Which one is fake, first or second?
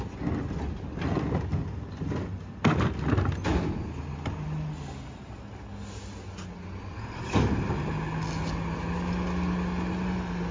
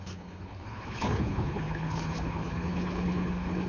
second